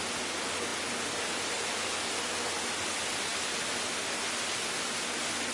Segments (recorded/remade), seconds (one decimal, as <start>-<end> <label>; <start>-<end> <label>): 0.0-5.5 recorded